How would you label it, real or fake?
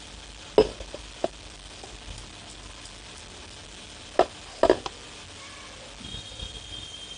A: real